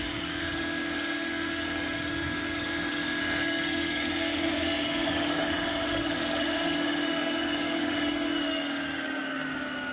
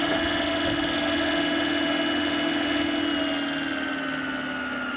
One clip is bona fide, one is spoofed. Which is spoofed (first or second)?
first